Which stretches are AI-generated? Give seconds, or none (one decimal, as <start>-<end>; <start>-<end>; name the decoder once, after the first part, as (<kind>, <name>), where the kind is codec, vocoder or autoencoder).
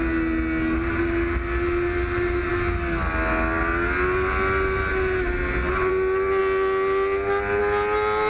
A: none